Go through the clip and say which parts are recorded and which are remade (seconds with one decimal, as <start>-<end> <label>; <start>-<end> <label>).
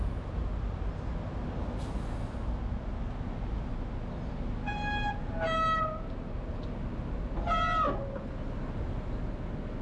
0.0-9.8 recorded